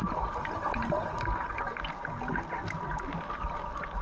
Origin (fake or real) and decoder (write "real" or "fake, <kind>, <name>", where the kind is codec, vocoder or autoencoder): real